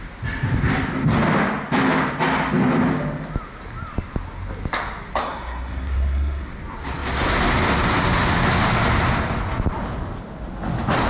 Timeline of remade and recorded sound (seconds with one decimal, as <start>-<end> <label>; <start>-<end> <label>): 0.0-5.2 recorded; 5.2-6.5 remade; 6.5-11.1 recorded